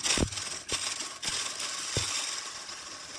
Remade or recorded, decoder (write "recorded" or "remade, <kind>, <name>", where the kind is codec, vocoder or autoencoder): recorded